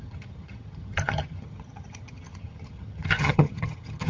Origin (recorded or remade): remade